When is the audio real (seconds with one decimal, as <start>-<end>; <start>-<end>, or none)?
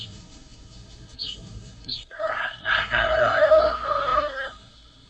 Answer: none